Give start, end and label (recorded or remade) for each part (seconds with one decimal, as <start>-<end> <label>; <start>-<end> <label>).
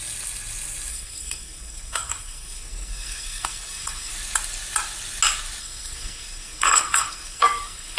0.0-0.9 recorded; 0.9-4.1 remade; 4.1-5.6 recorded; 5.6-8.0 remade